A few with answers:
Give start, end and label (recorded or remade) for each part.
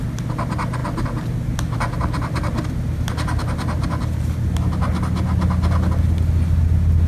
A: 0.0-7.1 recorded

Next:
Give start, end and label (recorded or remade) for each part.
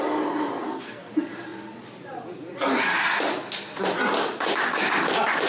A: 0.0-0.6 recorded; 0.6-1.1 remade; 1.1-5.5 recorded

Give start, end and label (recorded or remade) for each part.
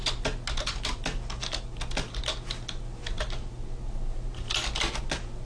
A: 0.0-5.4 recorded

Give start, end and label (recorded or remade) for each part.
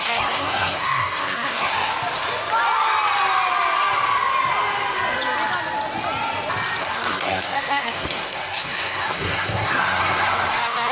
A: 0.0-1.9 remade; 1.9-6.8 recorded; 6.8-10.9 remade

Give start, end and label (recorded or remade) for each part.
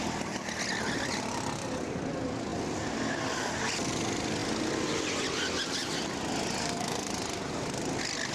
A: 0.0-6.6 recorded; 6.6-7.1 remade; 7.1-8.3 recorded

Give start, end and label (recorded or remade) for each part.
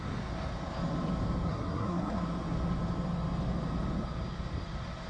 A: 0.0-1.5 recorded; 1.5-2.2 remade; 2.2-5.1 recorded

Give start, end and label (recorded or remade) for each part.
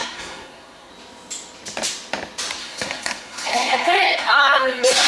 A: 0.0-0.9 remade; 0.9-2.6 recorded; 2.6-5.1 remade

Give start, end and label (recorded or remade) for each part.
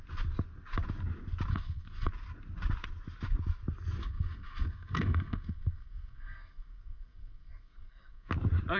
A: 0.0-1.5 recorded; 1.5-2.1 remade; 2.1-4.0 recorded; 4.0-8.3 remade; 8.3-8.8 recorded